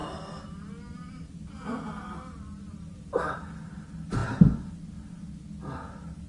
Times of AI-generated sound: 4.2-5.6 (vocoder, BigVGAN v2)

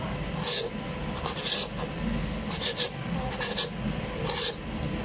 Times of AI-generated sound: none

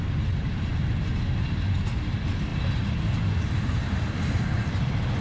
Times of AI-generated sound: none

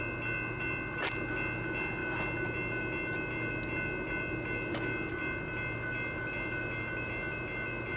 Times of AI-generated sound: none

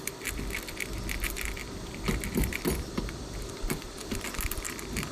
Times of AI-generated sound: none

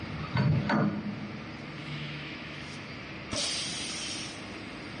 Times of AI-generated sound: 1.8-2.9 (autoencoder, DAC-VAE)

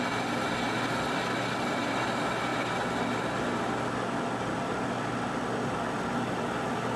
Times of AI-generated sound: none

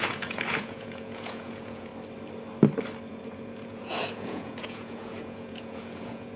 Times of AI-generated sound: 0.0-1.9 (vocoder, Vocos); 3.1-6.4